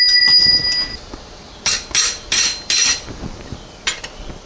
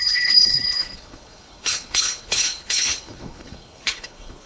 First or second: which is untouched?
first